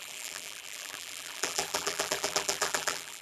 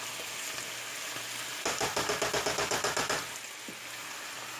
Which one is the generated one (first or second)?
first